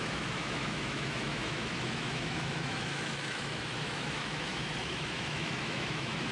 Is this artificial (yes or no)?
yes